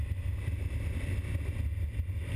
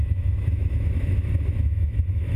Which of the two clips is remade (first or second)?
second